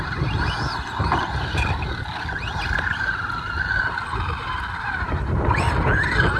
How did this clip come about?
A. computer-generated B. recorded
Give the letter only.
B